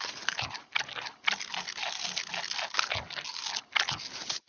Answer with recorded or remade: recorded